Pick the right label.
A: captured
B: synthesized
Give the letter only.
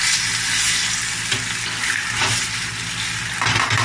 A